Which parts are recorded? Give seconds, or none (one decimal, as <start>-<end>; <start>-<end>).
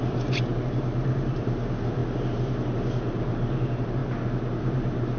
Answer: 2.0-3.1; 4.0-4.6